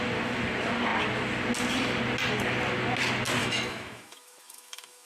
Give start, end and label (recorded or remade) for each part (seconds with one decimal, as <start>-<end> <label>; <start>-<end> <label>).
0.0-3.4 recorded; 3.4-5.1 remade